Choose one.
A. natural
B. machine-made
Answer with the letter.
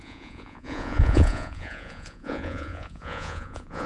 B